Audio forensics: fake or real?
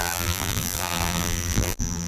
fake